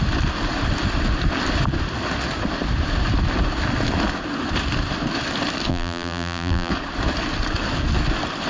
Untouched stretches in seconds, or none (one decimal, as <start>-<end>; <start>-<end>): 0.0-5.7; 6.7-8.5